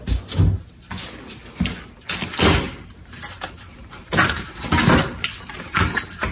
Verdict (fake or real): real